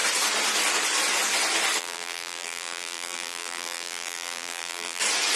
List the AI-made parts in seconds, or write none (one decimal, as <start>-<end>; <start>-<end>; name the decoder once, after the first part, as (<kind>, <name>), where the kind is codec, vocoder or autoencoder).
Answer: 1.8-5.0 (vocoder, BigVGAN v2)